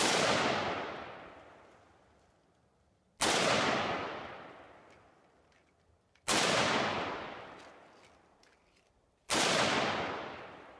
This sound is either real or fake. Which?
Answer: real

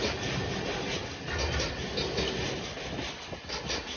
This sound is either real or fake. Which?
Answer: real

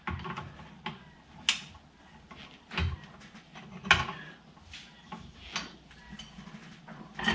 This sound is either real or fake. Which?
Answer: real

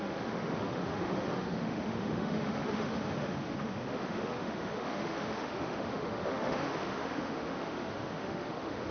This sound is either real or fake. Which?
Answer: fake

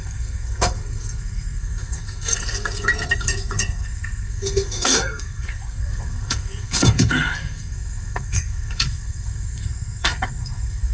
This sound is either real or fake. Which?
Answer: fake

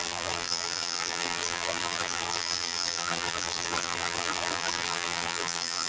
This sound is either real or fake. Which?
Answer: fake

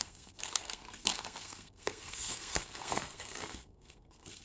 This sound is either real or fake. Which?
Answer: fake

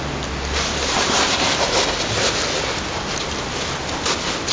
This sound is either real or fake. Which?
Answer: real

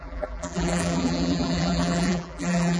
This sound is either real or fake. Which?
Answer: fake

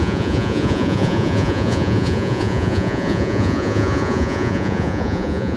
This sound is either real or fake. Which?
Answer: fake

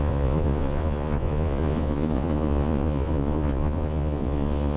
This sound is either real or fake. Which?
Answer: fake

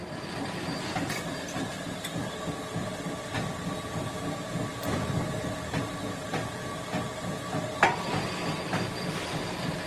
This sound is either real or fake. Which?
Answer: real